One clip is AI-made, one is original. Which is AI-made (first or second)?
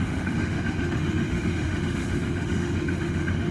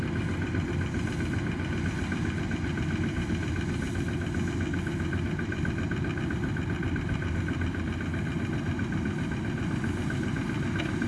first